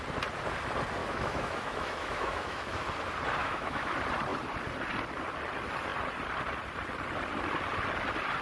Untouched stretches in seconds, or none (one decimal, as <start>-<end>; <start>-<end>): 0.0-1.0; 2.8-3.4; 3.9-8.4